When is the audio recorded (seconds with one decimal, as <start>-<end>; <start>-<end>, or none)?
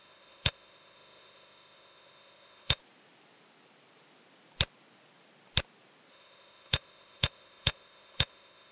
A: 2.8-6.1